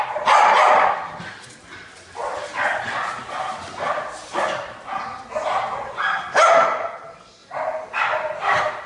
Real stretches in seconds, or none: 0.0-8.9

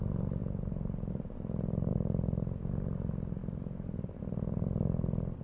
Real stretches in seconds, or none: 0.0-0.4; 1.1-1.9; 2.6-3.4; 4.2-5.4

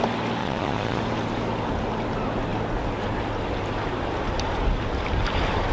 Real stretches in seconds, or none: 0.0-0.4; 1.0-5.7

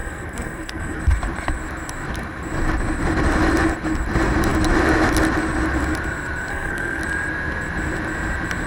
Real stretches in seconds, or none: 1.0-6.5; 7.0-8.7

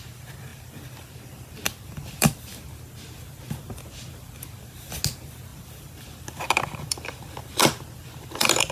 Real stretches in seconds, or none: 0.0-0.5; 2.4-5.5

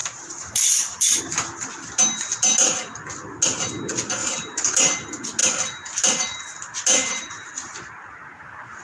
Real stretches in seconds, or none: 1.2-4.2; 4.8-7.0; 8.4-8.8

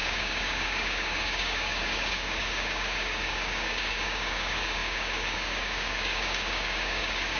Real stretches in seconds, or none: none